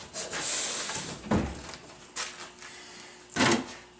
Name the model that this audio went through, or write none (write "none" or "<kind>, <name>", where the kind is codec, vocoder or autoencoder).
none